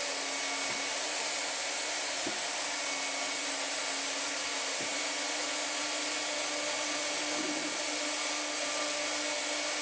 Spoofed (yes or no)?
no